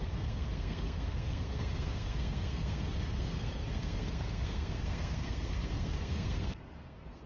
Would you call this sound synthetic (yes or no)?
yes